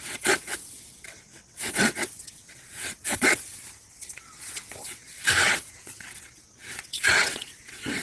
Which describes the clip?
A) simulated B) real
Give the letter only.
A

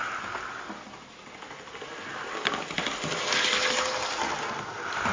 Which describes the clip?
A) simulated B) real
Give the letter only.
B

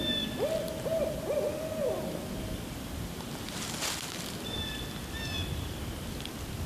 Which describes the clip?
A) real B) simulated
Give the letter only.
A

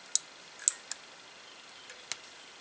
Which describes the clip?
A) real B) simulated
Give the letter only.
A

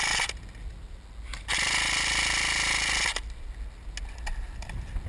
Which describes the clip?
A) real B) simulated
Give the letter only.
A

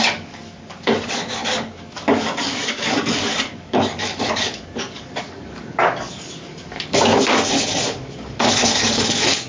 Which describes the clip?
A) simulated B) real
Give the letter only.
A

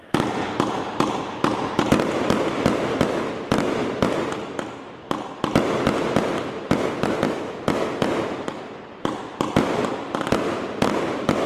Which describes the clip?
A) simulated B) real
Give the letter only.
B